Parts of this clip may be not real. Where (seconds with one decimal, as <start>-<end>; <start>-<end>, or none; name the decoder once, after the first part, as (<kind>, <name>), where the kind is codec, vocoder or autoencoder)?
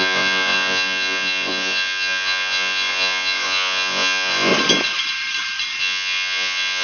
0.0-4.5 (vocoder, Vocos); 5.8-6.8